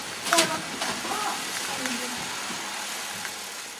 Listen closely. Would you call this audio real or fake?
real